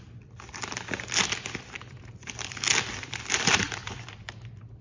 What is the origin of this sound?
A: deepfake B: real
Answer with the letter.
B